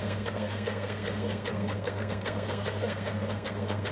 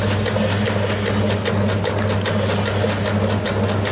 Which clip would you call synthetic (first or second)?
first